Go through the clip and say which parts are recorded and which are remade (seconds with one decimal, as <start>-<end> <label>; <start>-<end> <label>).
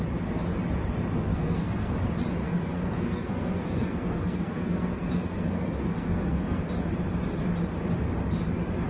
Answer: 0.0-1.3 recorded; 1.3-1.9 remade; 1.9-2.4 recorded; 2.4-6.6 remade; 6.6-8.9 recorded